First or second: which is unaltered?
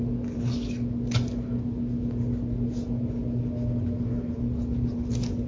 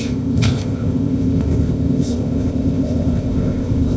first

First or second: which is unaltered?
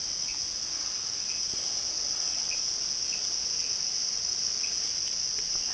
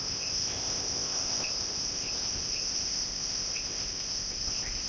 first